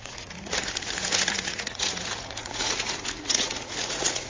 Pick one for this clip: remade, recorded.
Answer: remade